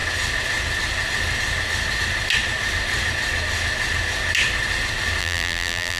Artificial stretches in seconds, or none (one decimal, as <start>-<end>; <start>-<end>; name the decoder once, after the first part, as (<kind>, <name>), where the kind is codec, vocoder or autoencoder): 5.2-6.0 (vocoder, BigVGAN v2)